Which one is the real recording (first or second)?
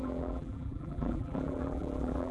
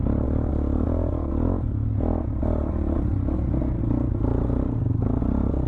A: second